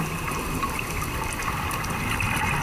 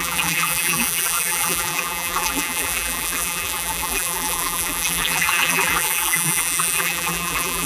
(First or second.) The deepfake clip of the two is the second